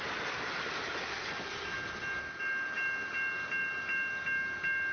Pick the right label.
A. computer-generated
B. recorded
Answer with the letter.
B